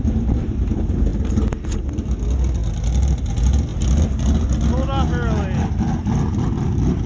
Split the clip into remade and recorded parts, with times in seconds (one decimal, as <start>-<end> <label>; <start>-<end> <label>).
0.0-7.1 recorded